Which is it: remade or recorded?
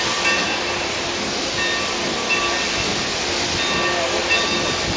recorded